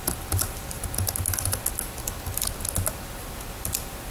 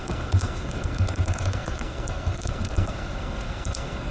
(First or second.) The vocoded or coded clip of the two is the second